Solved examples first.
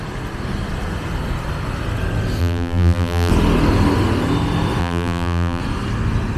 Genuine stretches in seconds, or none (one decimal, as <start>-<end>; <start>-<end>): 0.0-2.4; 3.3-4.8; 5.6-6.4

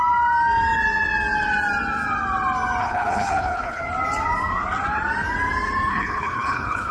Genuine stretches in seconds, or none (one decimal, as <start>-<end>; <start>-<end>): 0.0-2.8; 3.8-5.9

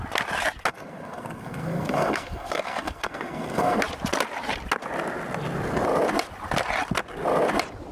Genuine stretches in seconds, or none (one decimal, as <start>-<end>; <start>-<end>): 0.0-0.7; 3.8-7.9